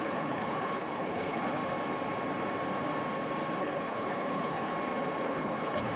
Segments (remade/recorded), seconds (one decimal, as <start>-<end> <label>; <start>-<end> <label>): 0.0-1.6 remade; 1.6-3.6 recorded; 3.6-4.7 remade; 4.7-5.2 recorded; 5.2-6.0 remade